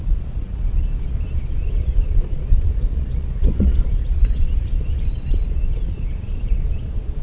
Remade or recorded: remade